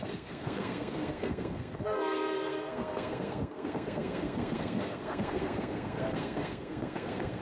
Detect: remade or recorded remade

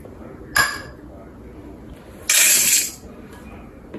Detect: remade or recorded recorded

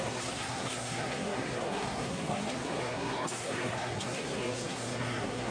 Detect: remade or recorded remade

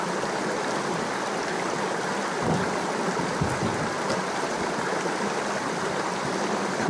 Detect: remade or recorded recorded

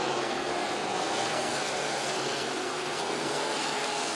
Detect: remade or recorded remade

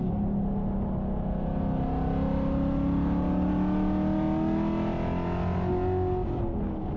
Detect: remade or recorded recorded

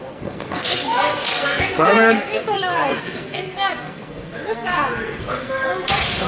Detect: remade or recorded remade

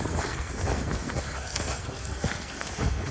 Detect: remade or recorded remade